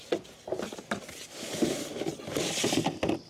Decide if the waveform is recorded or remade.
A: recorded